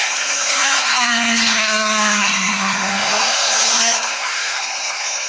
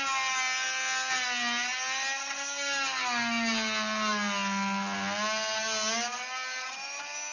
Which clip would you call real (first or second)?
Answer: second